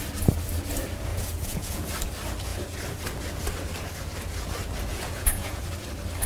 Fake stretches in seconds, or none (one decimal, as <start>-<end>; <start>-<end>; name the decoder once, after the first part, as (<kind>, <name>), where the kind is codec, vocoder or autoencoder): 1.1-1.9 (vocoder, Vocos); 4.9-5.6